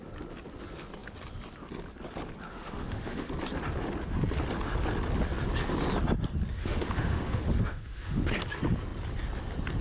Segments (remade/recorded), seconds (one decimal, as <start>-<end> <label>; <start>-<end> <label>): 0.0-2.5 recorded; 2.5-3.3 remade; 3.3-6.6 recorded; 6.6-8.3 remade; 8.3-9.8 recorded